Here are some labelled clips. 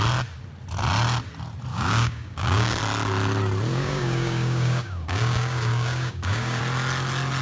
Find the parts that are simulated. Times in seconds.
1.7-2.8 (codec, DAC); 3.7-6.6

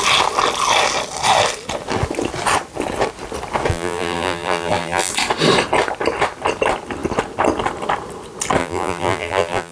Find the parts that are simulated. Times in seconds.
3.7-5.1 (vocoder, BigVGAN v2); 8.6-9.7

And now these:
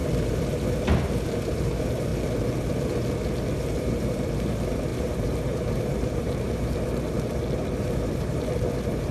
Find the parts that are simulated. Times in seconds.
0.0-2.1 (vocoder, BigVGAN v2); 3.5-9.1